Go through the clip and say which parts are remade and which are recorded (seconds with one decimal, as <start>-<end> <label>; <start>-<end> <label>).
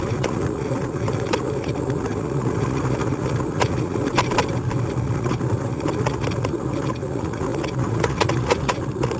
0.0-4.1 remade; 4.1-4.9 recorded; 4.9-9.2 remade